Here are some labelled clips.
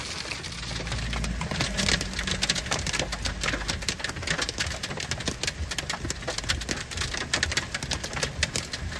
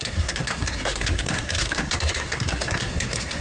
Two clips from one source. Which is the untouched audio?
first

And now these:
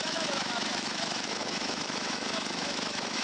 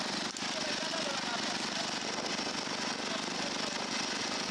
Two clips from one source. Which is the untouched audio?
second